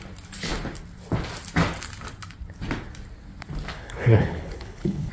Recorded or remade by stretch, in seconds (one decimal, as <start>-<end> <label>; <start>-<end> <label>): 0.0-3.7 recorded; 3.7-5.1 remade